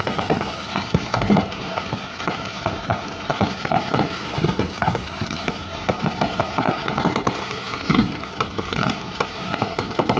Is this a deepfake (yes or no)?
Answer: yes